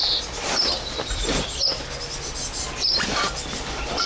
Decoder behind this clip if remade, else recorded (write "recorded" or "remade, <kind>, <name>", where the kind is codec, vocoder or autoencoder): recorded